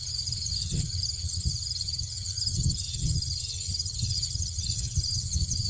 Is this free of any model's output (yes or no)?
no